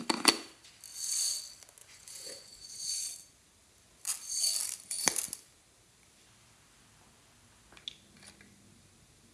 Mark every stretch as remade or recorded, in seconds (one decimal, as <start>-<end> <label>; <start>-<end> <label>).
0.0-1.8 recorded; 1.8-2.9 remade; 2.9-9.3 recorded

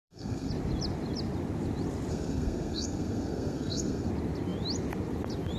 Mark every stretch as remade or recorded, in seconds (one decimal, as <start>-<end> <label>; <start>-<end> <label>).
0.0-0.5 remade; 0.5-2.1 recorded; 2.1-4.1 remade; 4.1-5.6 recorded

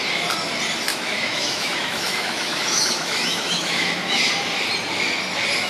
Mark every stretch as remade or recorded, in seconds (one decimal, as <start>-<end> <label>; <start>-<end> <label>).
0.0-0.9 recorded; 0.9-4.3 remade; 4.3-5.7 recorded

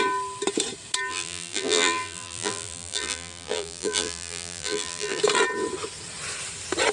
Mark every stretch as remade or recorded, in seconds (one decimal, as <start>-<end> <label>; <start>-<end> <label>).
0.0-1.1 recorded; 1.1-5.2 remade; 5.2-6.9 recorded

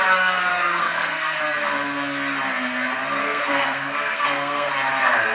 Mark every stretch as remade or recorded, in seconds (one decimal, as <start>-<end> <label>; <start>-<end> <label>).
0.0-0.5 recorded; 0.5-1.4 remade; 1.4-3.2 recorded; 3.2-4.7 remade; 4.7-5.3 recorded

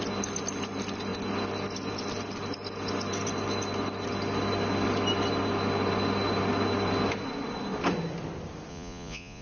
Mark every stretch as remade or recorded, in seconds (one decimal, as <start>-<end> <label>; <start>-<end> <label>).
0.0-8.7 recorded; 8.7-9.4 remade

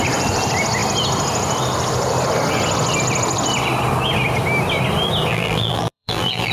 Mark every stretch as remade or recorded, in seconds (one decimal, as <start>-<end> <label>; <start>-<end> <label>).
0.0-5.3 recorded; 5.3-6.5 remade